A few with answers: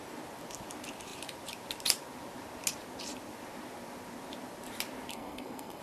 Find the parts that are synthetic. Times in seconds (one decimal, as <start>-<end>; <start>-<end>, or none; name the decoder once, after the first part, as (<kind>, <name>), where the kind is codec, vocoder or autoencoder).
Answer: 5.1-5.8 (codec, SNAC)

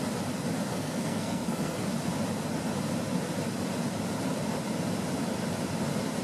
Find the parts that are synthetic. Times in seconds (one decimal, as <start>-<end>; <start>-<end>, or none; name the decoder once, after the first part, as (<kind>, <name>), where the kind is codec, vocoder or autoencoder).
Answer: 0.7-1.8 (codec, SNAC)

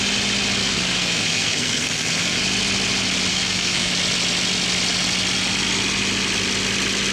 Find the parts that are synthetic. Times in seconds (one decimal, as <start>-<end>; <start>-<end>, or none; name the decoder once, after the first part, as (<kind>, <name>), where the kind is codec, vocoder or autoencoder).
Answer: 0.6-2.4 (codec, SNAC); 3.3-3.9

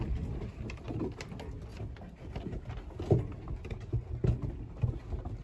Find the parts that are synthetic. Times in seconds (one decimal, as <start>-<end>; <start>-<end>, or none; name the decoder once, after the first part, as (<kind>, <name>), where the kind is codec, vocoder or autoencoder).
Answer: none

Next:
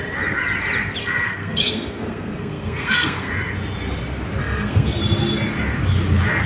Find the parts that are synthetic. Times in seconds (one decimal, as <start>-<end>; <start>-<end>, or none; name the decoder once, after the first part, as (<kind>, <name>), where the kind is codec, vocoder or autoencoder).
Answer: 1.0-3.3 (codec, SNAC); 4.4-5.0

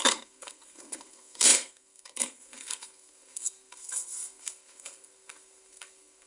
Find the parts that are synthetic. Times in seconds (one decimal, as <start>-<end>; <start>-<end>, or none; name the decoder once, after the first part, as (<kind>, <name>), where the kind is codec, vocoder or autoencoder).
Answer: 0.0-6.3 (codec, SNAC)

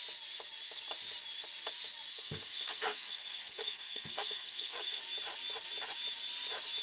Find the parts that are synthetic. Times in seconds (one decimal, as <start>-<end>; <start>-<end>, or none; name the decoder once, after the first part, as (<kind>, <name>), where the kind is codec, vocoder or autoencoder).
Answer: 2.1-5.0 (codec, SNAC)

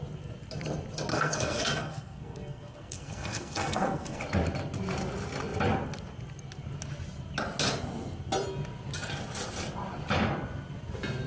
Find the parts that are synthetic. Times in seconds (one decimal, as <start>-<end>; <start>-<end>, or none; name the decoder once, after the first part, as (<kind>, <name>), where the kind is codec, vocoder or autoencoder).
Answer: 1.1-4.2 (codec, SNAC)